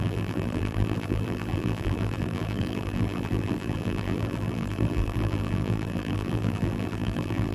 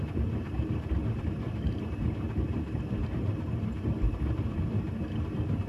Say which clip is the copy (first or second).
first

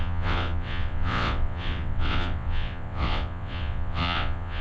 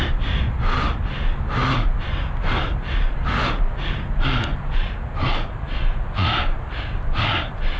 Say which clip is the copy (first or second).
first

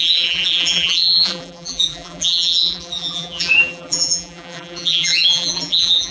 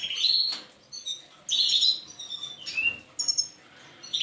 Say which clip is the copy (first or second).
first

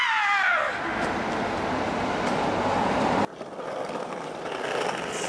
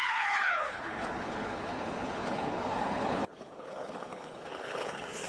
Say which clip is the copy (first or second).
second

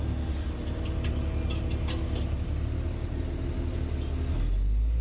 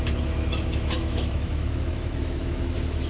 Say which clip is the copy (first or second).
second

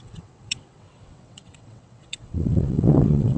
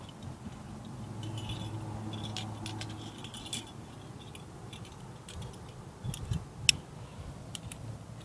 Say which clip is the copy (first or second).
first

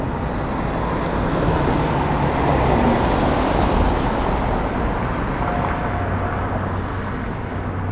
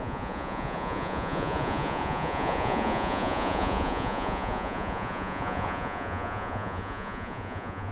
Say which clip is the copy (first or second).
second